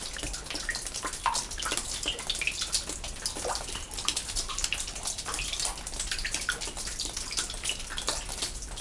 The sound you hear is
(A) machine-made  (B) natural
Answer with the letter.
B